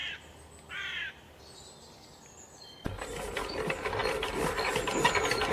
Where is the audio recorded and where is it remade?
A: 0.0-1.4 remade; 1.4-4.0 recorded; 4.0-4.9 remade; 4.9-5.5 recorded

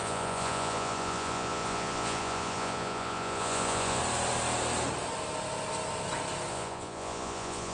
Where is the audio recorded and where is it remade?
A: 0.0-4.0 remade; 4.0-6.5 recorded; 6.5-7.7 remade

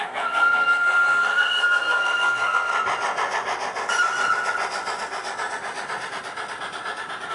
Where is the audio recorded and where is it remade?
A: 0.0-2.7 remade; 2.7-7.3 recorded

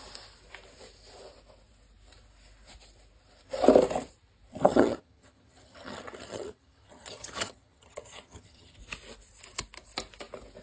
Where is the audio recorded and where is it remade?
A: 0.0-4.5 recorded; 4.5-8.8 remade; 8.8-10.6 recorded

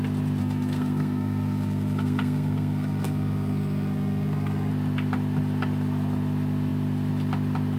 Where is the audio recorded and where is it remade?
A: 0.0-0.4 recorded; 0.4-4.7 remade; 4.7-7.8 recorded

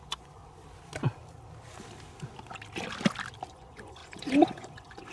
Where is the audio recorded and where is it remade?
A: 0.0-0.4 remade; 0.4-3.5 recorded; 3.5-5.1 remade

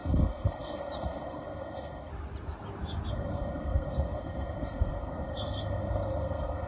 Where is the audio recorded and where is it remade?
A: 0.0-2.1 remade; 2.1-3.1 recorded; 3.1-6.7 remade

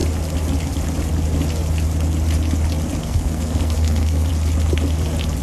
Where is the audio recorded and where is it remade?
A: 0.0-3.0 recorded; 3.0-4.3 remade; 4.3-5.4 recorded